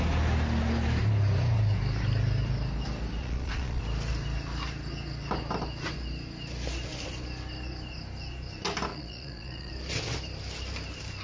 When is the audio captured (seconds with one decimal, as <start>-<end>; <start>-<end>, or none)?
0.0-3.2; 3.8-8.9; 9.7-11.2